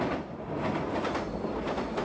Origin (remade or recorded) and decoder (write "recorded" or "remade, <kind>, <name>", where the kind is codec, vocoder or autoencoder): recorded